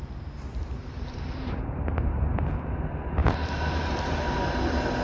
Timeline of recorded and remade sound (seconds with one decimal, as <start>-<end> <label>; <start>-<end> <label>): 0.0-0.5 recorded; 0.5-2.2 remade; 2.2-3.2 recorded; 3.2-4.4 remade; 4.4-5.0 recorded